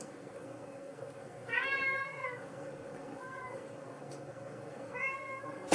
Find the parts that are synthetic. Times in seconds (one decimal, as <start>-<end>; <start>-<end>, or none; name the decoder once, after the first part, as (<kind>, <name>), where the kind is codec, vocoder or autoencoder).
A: 0.0-5.7 (codec, SNAC)